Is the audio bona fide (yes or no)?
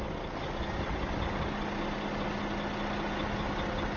yes